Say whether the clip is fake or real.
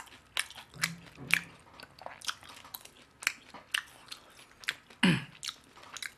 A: real